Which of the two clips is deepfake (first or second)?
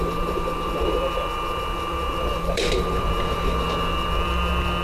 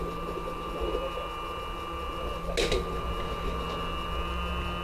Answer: first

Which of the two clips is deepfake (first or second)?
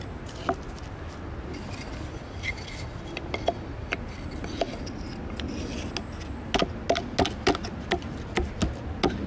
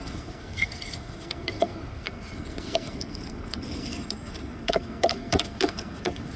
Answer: second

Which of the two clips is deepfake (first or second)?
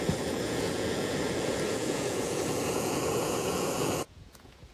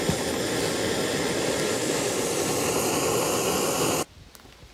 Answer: first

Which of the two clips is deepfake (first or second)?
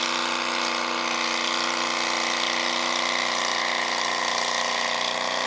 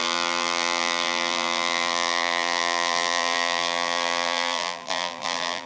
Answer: second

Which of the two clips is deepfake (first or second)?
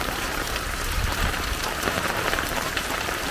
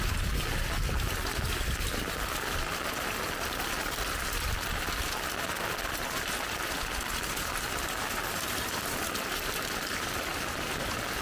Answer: first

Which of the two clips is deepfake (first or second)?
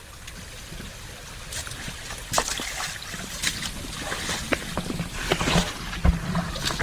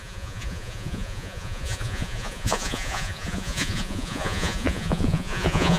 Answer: second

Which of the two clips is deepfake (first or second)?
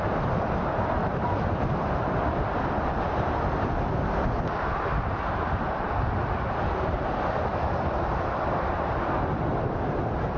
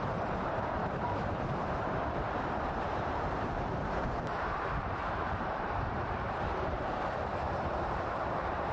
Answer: second